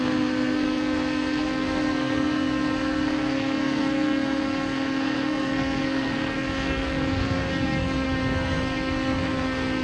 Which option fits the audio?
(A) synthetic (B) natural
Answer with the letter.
A